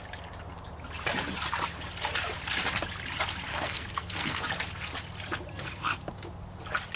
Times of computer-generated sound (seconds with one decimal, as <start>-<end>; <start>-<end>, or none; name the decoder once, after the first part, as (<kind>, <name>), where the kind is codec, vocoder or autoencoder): 3.5-4.4 (codec, SNAC); 5.5-6.0